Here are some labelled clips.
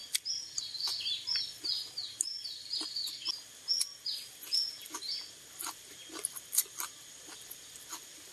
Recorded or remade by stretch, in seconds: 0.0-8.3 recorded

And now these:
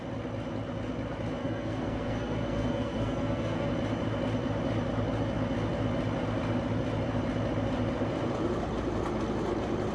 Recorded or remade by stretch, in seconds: 0.0-1.4 recorded; 1.4-3.7 remade; 3.7-9.9 recorded

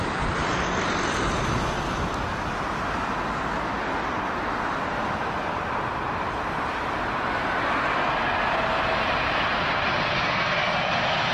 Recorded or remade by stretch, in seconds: 0.0-0.4 recorded; 0.4-2.5 remade; 2.5-11.3 recorded

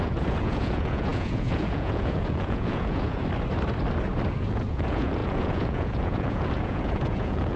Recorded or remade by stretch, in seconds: 0.0-3.2 remade; 3.2-4.3 recorded; 4.3-7.6 remade

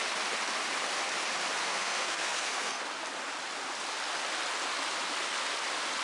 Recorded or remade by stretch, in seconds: 0.0-1.6 recorded; 1.6-2.8 remade; 2.8-6.0 recorded